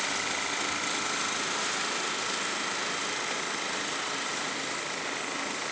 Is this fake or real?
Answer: real